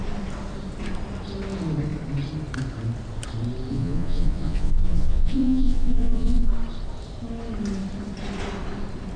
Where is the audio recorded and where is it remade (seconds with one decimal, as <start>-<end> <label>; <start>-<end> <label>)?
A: 0.0-3.7 recorded; 3.7-6.5 remade; 6.5-9.2 recorded